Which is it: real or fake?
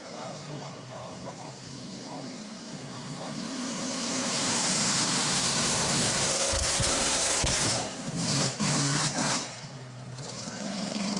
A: fake